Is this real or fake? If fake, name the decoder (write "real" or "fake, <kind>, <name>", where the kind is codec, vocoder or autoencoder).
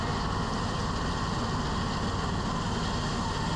real